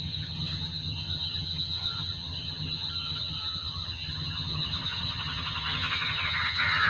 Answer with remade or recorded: remade